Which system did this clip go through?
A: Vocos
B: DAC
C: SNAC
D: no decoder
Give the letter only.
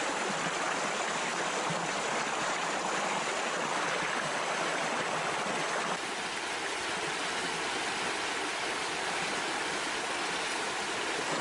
D